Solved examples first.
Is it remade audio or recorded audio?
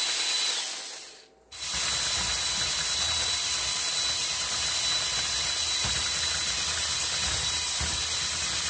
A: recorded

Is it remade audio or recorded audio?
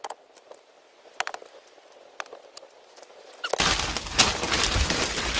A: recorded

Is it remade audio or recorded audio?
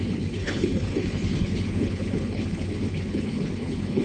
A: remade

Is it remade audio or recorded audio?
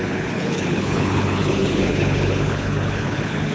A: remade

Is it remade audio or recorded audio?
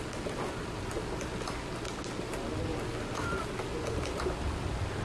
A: recorded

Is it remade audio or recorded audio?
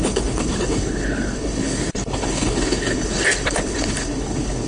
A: remade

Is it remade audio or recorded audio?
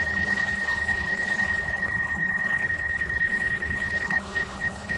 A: remade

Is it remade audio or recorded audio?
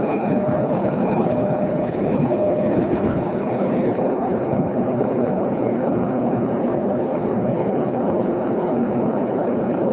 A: remade